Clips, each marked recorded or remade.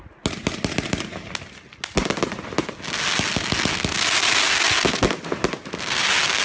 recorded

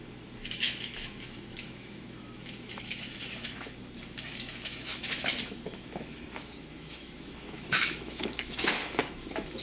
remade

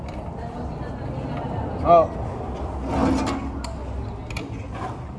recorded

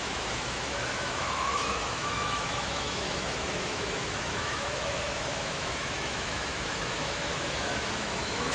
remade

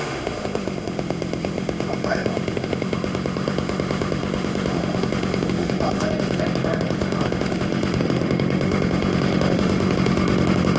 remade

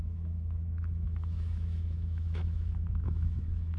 remade